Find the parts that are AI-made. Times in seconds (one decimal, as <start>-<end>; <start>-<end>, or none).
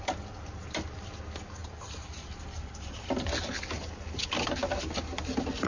1.6-3.5